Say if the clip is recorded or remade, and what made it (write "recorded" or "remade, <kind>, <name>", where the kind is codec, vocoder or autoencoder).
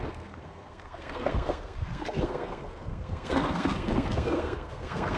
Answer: remade, codec, SNAC